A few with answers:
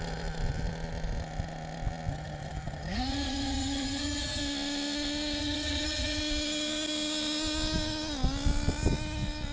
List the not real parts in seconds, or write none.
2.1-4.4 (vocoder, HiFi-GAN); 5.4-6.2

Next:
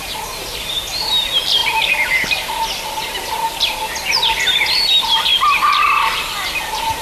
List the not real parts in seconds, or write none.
none

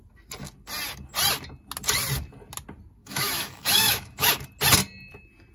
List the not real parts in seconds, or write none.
3.0-4.3 (autoencoder, DAC-VAE)

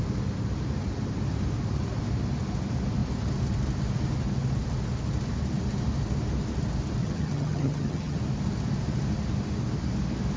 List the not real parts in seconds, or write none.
7.0-8.2 (vocoder, HiFi-GAN)

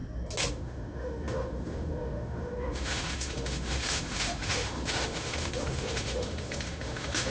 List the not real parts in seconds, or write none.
0.5-7.3 (autoencoder, DAC-VAE)